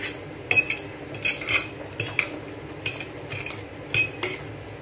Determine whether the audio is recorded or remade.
recorded